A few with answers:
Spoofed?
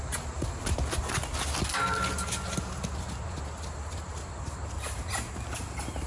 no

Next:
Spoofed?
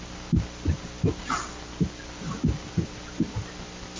no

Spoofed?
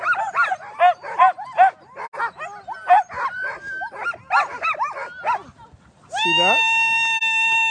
no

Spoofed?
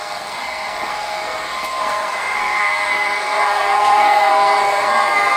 yes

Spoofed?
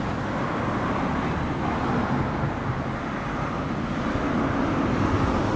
no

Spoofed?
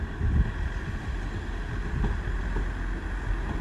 no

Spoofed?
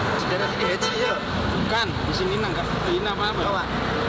no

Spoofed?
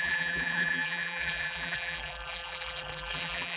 yes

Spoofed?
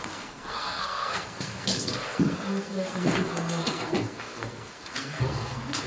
yes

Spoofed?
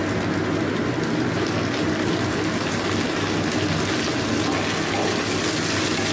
no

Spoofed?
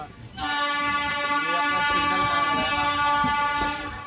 no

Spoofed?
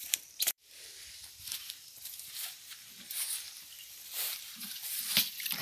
yes